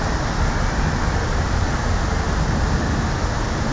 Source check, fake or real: real